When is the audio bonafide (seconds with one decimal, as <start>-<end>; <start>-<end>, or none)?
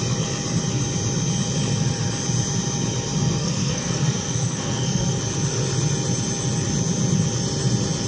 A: 0.0-3.4; 5.2-8.1